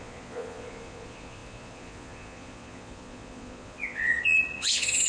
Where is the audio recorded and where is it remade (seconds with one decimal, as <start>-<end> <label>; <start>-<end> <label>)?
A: 0.0-5.1 remade